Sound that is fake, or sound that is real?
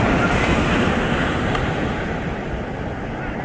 real